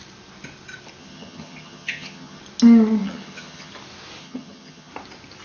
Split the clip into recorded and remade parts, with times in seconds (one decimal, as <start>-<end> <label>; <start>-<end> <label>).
0.0-1.0 recorded; 1.0-2.4 remade; 2.4-3.0 recorded; 3.0-3.7 remade; 3.7-4.2 recorded; 4.2-4.9 remade; 4.9-5.4 recorded